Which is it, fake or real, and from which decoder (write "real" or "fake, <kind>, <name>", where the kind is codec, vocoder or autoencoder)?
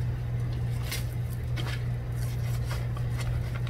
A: real